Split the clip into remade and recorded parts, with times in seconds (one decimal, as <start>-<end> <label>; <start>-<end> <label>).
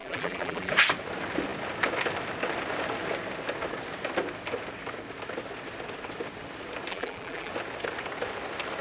0.0-0.7 remade; 0.7-6.9 recorded; 6.9-7.5 remade; 7.5-8.8 recorded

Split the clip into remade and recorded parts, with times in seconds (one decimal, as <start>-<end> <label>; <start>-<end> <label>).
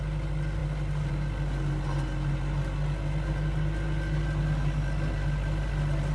0.0-6.1 recorded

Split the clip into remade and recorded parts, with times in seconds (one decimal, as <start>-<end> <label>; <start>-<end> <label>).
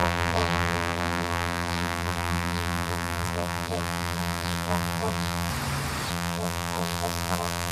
0.0-5.5 remade; 5.5-6.1 recorded; 6.1-7.7 remade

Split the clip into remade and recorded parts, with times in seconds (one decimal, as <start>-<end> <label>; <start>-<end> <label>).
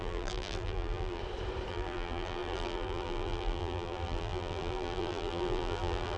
0.0-1.2 remade; 1.2-1.7 recorded; 1.7-6.2 remade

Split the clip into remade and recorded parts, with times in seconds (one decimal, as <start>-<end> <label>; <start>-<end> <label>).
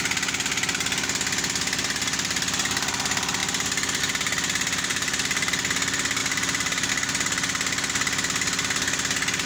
0.0-4.9 recorded; 4.9-5.5 remade; 5.5-6.2 recorded; 6.2-6.9 remade; 6.9-9.5 recorded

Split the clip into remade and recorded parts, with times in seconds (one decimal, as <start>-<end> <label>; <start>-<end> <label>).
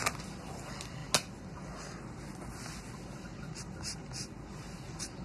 0.0-5.2 recorded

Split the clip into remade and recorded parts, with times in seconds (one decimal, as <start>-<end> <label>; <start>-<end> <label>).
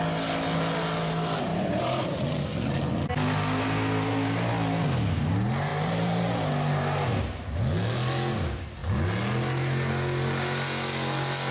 0.0-1.5 recorded; 1.5-2.2 remade; 2.2-5.7 recorded; 5.7-7.2 remade; 7.2-11.5 recorded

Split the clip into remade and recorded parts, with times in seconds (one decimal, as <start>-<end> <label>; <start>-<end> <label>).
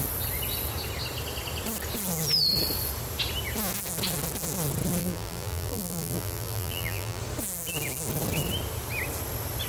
0.0-5.0 recorded; 5.0-7.2 remade; 7.2-9.7 recorded